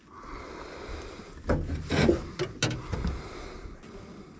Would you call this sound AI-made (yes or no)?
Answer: no